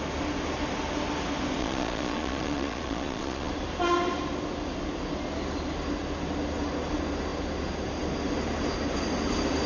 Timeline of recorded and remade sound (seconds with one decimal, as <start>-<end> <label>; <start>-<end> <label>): 0.0-1.6 recorded; 1.6-3.5 remade; 3.5-9.7 recorded